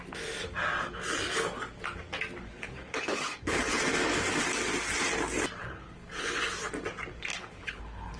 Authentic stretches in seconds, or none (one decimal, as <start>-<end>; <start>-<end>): 0.0-2.4; 3.8-5.6; 6.5-7.3